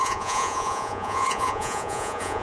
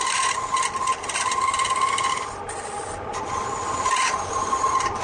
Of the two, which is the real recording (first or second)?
second